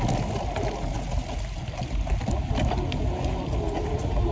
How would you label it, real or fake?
real